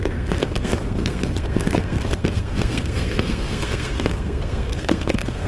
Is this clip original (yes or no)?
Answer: no